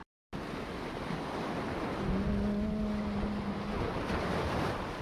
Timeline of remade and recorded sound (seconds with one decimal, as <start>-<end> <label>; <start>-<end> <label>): 0.0-5.0 recorded